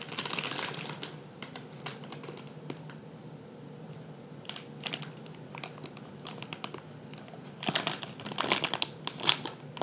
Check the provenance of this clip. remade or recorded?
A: recorded